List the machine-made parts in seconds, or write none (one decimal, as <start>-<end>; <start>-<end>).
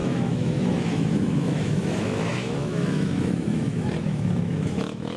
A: 0.0-5.2